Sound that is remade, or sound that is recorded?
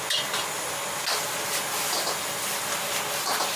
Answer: recorded